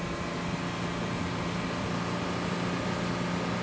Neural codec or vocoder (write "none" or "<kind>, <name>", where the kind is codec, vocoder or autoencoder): none